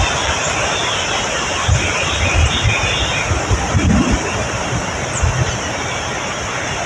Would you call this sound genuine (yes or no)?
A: yes